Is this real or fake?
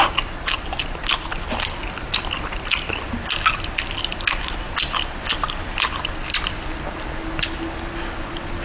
real